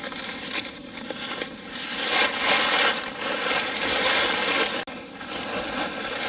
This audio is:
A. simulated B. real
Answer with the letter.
B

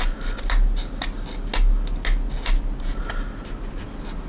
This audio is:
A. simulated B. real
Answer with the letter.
B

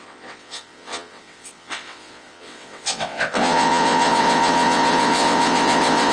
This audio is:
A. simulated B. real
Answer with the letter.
A